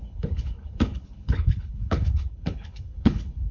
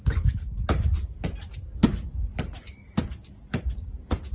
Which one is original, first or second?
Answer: second